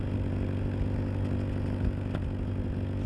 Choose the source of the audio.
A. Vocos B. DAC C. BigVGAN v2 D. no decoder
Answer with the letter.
D